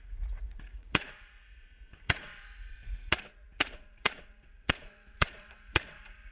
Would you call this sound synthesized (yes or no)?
yes